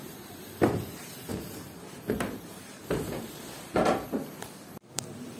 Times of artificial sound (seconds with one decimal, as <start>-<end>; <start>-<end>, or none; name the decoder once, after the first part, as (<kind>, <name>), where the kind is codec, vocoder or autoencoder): 0.0-5.4 (vocoder, BigVGAN v2)